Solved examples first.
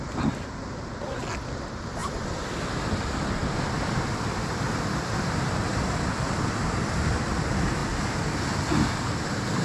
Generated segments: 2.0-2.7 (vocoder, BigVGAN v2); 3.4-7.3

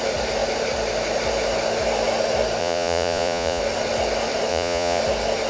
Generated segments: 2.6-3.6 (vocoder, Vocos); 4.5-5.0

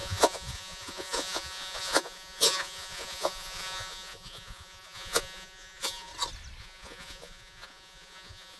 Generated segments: 0.0-6.1 (vocoder, Vocos); 6.6-8.6